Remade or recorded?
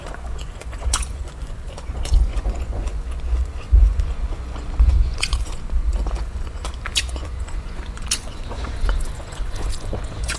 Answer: remade